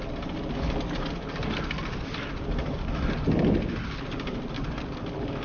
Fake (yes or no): no